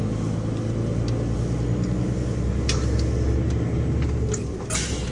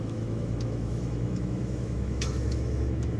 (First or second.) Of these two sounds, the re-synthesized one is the second